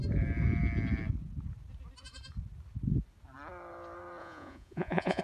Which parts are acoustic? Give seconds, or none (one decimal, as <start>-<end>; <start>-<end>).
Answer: 0.0-4.2

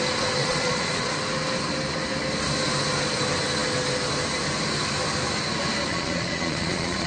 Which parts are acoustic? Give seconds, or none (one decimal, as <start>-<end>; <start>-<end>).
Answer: 0.0-0.4; 1.1-5.9

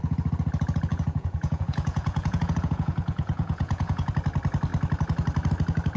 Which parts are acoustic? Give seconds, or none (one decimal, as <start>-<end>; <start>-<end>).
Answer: 0.0-0.9; 4.1-6.0

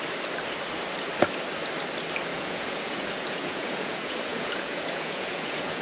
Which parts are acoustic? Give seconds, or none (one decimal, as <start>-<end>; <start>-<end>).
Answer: 0.0-2.3

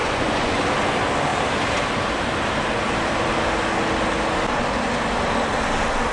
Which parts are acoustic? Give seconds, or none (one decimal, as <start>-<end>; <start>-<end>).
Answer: 0.6-6.1